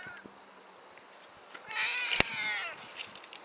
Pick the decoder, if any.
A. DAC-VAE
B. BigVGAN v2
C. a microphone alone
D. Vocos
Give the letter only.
C